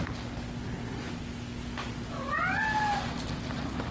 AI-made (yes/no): no